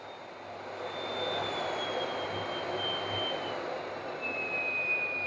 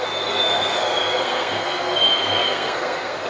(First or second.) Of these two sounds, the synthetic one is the second